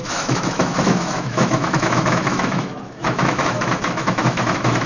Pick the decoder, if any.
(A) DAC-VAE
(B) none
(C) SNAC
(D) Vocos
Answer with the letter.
A